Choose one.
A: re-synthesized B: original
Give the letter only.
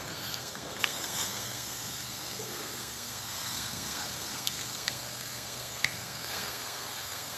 A